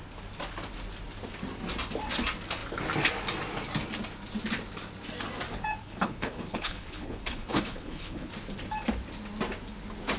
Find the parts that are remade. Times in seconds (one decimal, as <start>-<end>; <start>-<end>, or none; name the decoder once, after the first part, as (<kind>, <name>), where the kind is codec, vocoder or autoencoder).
5.8-8.3 (codec, HILCodec)